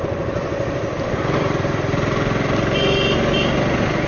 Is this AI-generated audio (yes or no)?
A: no